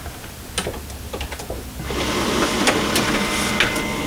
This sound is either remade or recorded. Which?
recorded